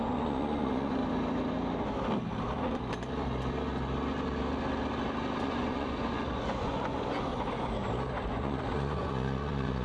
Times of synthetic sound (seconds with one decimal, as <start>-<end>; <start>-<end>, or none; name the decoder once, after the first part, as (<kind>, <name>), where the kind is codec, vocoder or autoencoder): 0.0-1.0 (vocoder, Vocos); 5.4-7.3; 8.3-9.8